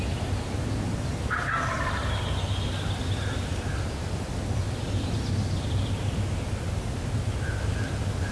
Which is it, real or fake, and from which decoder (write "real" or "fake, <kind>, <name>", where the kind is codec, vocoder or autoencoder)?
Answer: real